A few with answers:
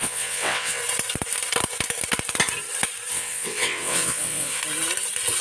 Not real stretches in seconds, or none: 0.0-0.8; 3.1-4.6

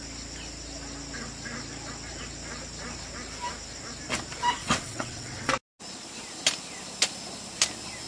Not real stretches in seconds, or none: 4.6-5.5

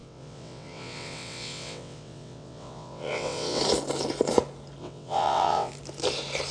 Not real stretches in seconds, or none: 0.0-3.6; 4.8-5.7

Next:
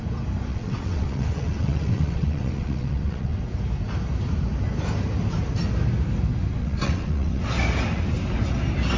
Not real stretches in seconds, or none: 0.5-3.4; 6.6-7.4